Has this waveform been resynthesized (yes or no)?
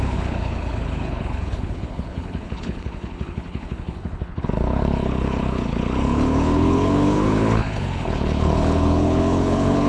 yes